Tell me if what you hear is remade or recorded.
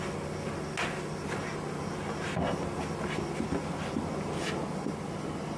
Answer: recorded